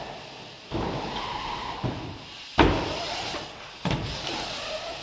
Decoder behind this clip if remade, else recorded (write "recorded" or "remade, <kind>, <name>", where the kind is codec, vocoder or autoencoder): recorded